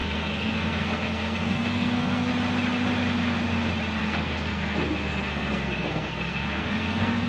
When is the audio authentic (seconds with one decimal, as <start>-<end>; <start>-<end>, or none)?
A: 2.3-4.0